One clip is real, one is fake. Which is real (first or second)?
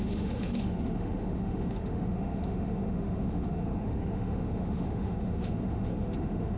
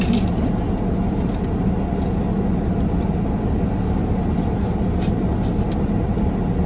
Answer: second